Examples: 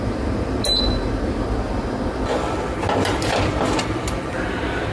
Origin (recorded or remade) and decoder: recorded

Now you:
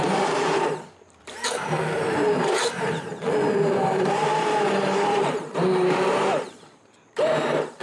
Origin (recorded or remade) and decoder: remade, vocoder, BigVGAN v2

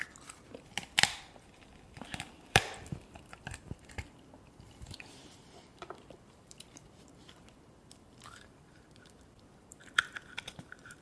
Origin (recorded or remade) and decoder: remade, vocoder, BigVGAN v2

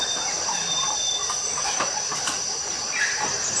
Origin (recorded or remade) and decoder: remade, vocoder, BigVGAN v2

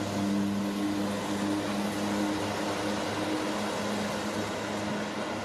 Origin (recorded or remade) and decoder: recorded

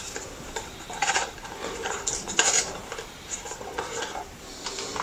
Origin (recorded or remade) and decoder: remade, vocoder, BigVGAN v2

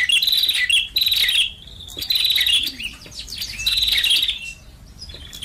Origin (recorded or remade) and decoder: recorded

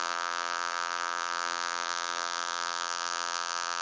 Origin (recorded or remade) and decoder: remade, vocoder, BigVGAN v2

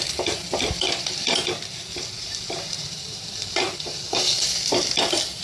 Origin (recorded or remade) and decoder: remade, vocoder, BigVGAN v2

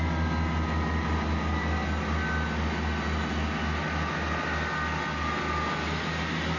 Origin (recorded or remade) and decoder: recorded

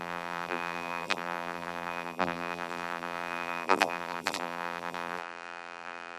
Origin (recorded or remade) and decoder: remade, vocoder, BigVGAN v2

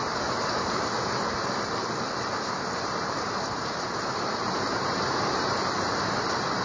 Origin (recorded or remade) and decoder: remade, vocoder, BigVGAN v2